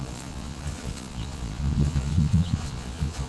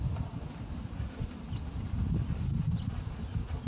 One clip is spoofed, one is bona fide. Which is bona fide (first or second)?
second